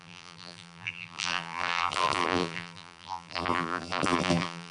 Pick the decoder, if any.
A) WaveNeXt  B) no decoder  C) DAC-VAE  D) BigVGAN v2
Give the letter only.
D